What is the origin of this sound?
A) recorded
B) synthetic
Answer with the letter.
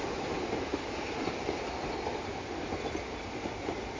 A